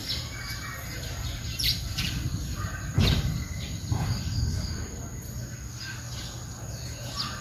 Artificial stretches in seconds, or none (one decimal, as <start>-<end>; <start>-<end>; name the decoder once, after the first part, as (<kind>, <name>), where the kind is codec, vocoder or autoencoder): 0.0-4.4 (vocoder, BigVGAN v2)